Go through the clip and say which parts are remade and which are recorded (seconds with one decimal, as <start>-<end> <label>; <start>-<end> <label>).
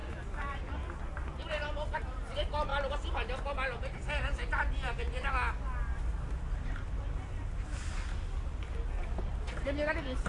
0.0-1.0 recorded; 1.0-2.7 remade; 2.7-6.5 recorded; 6.5-9.3 remade; 9.3-10.3 recorded